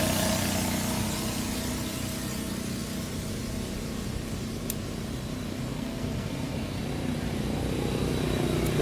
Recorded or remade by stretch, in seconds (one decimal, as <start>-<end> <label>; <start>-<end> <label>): 0.0-5.7 recorded; 5.7-6.8 remade; 6.8-8.8 recorded